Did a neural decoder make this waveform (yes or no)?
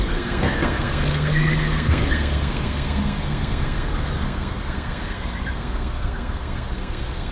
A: yes